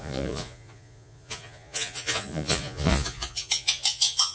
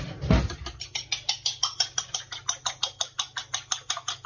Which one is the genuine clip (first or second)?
second